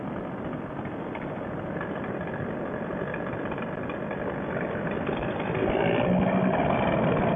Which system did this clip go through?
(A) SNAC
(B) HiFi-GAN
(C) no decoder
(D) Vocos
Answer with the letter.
C